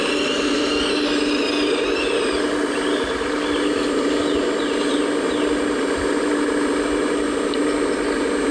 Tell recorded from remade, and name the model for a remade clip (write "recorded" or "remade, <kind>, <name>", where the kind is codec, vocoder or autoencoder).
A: recorded